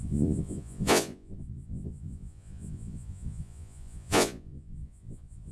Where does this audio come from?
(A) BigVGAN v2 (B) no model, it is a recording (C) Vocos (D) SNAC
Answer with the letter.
C